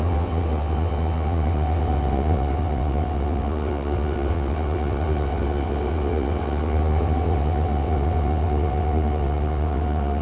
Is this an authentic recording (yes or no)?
no